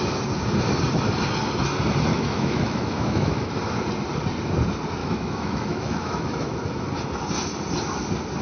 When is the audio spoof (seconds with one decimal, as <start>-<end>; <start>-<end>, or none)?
2.1-3.5; 5.0-6.8